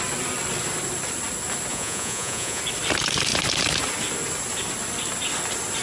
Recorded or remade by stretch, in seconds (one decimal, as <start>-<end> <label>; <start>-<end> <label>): 0.0-1.7 recorded; 1.7-2.6 remade; 2.6-5.8 recorded